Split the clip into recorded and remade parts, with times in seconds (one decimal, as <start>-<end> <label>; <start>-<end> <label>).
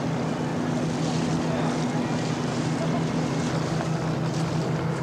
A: 0.0-5.0 recorded